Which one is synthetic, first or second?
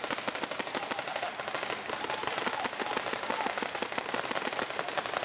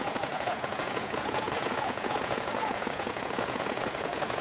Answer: second